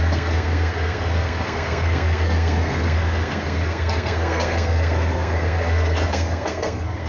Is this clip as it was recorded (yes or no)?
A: no